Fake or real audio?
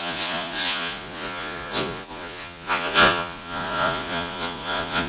fake